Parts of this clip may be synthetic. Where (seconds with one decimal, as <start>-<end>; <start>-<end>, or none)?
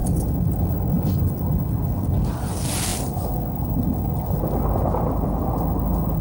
none